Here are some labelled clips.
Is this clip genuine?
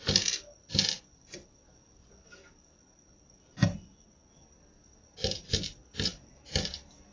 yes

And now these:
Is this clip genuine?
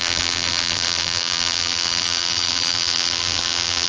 no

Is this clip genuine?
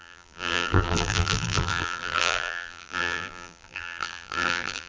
no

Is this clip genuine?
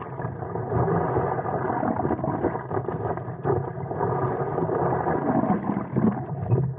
yes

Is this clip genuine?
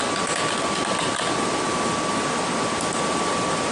yes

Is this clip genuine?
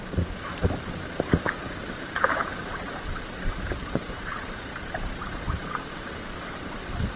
no